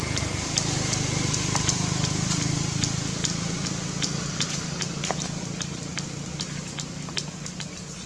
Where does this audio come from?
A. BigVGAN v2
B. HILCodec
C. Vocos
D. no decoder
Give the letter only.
D